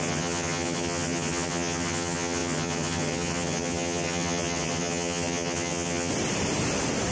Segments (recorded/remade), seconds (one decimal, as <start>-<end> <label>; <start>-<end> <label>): 0.0-6.1 remade; 6.1-7.1 recorded